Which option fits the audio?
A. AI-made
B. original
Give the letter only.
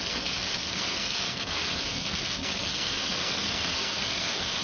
A